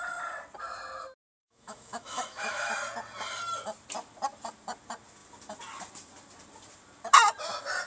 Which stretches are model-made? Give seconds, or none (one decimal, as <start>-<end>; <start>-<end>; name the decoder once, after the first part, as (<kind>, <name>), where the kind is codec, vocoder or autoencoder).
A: 1.4-2.7 (autoencoder, DAC-VAE)